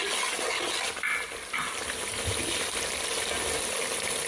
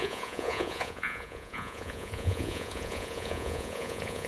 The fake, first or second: second